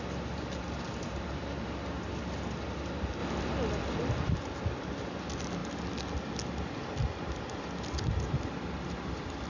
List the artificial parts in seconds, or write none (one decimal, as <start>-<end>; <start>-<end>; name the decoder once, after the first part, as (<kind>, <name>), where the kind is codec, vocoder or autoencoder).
none